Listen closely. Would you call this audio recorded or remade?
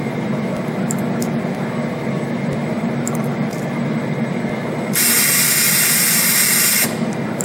recorded